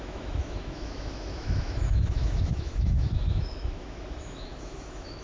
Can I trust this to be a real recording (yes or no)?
no